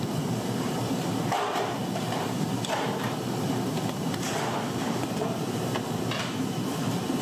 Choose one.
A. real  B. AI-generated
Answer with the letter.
B